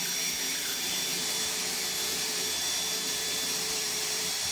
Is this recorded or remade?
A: remade